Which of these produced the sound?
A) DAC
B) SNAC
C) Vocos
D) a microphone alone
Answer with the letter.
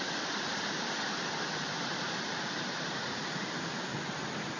D